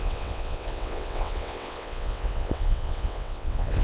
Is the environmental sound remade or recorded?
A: remade